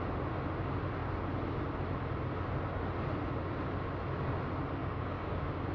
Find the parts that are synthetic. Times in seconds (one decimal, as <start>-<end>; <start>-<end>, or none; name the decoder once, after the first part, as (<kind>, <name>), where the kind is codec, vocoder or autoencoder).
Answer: 4.8-5.7 (codec, DAC)